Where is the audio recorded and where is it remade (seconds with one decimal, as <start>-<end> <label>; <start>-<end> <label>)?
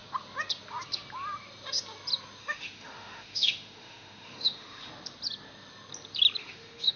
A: 0.0-2.4 recorded; 2.4-4.9 remade; 4.9-6.4 recorded; 6.4-7.0 remade